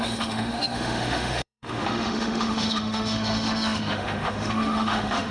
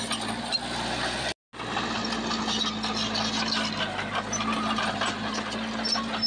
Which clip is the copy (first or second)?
first